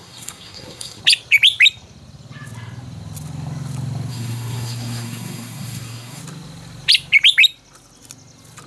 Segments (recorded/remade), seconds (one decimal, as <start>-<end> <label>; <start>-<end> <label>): 0.0-1.0 remade; 1.0-4.1 recorded; 4.1-6.2 remade; 6.2-8.7 recorded